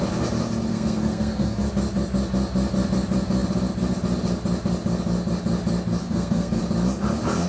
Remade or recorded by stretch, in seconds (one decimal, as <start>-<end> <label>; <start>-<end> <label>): 0.0-0.7 recorded; 0.7-1.7 remade; 1.7-6.0 recorded; 6.0-6.6 remade; 6.6-7.5 recorded